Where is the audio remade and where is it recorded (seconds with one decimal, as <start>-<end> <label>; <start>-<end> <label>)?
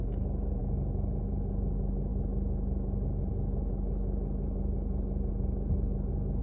0.0-6.4 recorded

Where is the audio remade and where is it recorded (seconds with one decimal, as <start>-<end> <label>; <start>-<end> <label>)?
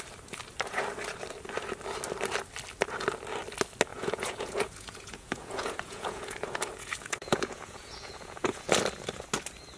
0.0-3.9 recorded; 3.9-8.7 remade; 8.7-9.8 recorded